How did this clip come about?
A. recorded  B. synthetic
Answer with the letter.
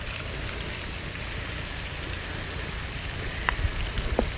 A